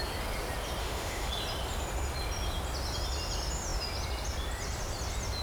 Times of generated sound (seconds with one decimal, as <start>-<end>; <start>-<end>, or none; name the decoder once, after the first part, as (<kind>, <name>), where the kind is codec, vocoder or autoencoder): 0.8-1.3 (autoencoder, DAC-VAE)